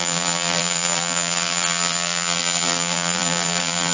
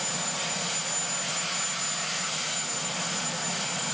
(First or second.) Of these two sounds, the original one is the second